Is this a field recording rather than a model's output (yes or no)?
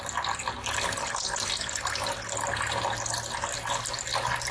yes